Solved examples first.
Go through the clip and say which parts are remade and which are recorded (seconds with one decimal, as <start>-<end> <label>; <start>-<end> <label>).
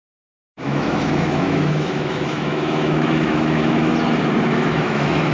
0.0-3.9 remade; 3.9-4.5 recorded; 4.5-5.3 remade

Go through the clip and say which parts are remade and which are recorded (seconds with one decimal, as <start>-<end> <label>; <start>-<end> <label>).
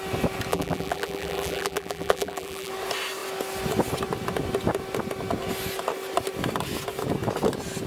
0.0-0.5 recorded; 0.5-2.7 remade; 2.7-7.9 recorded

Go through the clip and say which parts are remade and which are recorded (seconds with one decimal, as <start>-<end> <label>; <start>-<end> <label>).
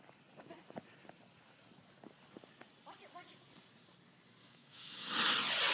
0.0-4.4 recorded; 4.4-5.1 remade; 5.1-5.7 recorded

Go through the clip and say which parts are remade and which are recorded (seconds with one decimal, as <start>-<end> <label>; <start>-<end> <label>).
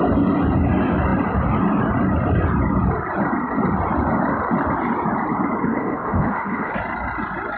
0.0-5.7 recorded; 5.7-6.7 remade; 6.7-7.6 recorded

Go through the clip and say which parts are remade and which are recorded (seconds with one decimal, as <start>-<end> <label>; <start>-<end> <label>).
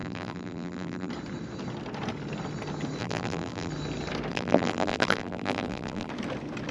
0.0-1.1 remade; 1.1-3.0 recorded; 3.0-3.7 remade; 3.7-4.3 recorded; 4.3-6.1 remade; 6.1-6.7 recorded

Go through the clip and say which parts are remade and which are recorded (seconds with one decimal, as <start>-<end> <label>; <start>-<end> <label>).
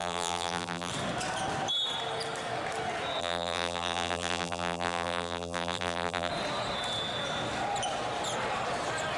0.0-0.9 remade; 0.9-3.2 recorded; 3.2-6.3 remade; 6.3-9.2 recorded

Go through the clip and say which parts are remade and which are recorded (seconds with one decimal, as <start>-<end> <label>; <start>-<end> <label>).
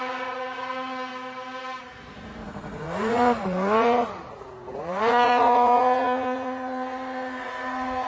0.0-1.1 remade; 1.1-1.8 recorded; 1.8-8.1 remade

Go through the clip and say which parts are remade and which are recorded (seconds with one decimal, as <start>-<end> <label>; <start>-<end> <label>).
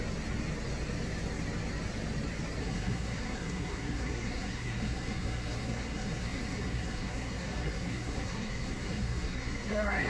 0.0-2.6 recorded; 2.6-10.1 remade